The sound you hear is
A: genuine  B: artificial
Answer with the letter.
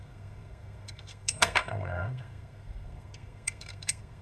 B